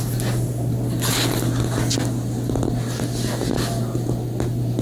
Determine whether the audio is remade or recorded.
recorded